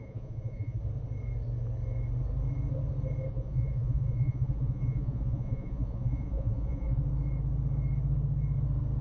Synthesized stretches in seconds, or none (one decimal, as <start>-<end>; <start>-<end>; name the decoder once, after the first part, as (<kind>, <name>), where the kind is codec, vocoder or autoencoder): 0.0-0.8 (vocoder, Vocos); 3.3-7.0